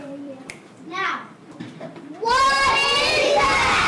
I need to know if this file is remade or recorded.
remade